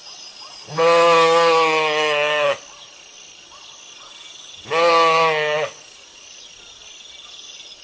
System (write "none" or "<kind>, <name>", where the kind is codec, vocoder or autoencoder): none